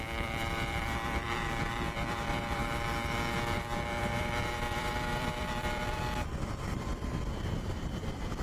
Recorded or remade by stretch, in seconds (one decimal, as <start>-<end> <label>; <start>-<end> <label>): 0.0-2.6 remade; 2.6-4.0 recorded; 4.0-8.4 remade